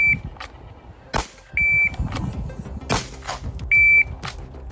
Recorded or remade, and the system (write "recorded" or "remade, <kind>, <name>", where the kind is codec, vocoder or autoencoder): recorded